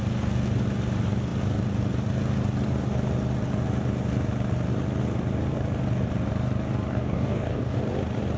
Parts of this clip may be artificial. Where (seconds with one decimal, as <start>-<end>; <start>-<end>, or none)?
6.9-7.8